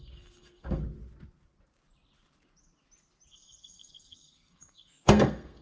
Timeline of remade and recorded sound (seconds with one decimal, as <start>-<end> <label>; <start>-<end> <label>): 0.0-0.8 remade; 0.8-3.3 recorded; 3.3-5.6 remade